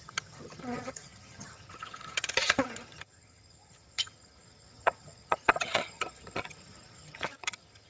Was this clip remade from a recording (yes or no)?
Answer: yes